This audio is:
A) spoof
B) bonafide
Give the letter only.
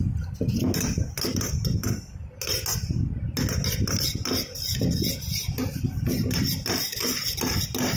B